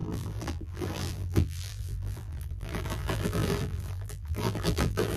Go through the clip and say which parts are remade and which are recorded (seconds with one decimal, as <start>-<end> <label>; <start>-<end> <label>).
0.0-5.2 remade